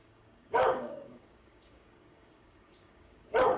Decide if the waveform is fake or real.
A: fake